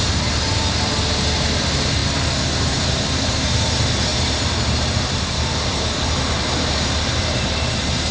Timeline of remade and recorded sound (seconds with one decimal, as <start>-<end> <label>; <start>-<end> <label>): 0.0-2.0 remade; 2.0-2.6 recorded; 2.6-8.1 remade